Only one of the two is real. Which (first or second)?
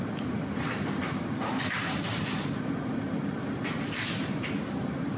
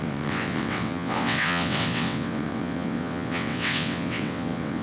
first